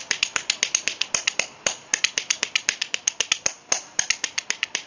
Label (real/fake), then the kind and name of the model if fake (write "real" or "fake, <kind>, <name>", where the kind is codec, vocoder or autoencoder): real